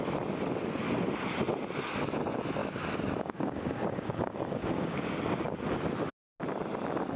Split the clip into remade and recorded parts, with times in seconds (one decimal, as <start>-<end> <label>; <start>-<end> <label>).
0.0-2.6 recorded; 2.6-5.2 remade; 5.2-7.2 recorded